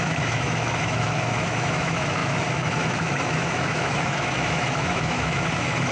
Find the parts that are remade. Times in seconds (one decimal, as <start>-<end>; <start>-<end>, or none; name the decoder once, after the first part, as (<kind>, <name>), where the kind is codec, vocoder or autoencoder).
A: 0.0-5.9 (autoencoder, DAC-VAE)